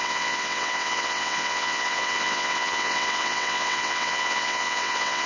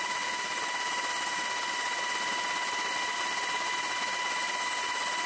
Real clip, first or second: second